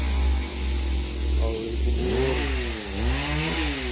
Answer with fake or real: real